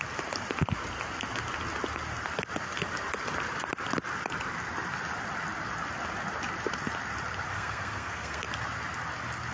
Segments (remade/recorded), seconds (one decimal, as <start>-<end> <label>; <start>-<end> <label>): 0.0-7.5 recorded; 7.5-8.4 remade; 8.4-9.5 recorded